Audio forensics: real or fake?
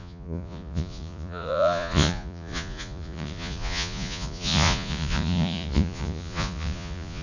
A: fake